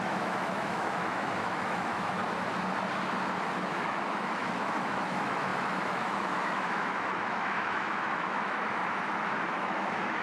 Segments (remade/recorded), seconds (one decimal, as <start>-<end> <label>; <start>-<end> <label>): 0.0-2.2 remade; 2.2-3.6 recorded; 3.6-8.8 remade; 8.8-9.5 recorded; 9.5-10.2 remade